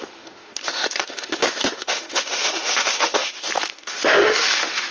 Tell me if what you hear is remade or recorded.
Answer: remade